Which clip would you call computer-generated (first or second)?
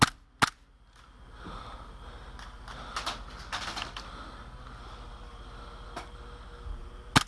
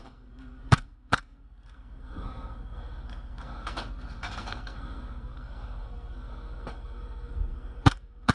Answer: second